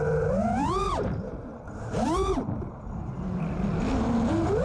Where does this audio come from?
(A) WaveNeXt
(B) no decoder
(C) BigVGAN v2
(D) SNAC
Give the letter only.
B